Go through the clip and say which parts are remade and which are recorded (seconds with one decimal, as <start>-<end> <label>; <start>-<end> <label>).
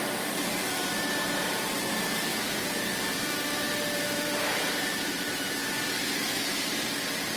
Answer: 0.0-2.3 remade; 2.3-3.3 recorded; 3.3-5.6 remade; 5.6-7.4 recorded